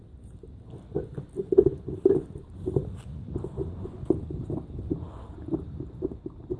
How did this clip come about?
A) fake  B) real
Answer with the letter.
B